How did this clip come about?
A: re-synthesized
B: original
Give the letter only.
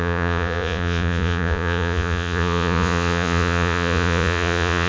A